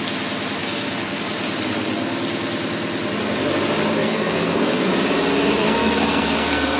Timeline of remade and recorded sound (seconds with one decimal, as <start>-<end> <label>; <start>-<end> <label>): 0.0-0.6 recorded; 0.6-1.2 remade; 1.2-4.0 recorded; 4.0-4.9 remade; 4.9-5.6 recorded; 5.6-6.8 remade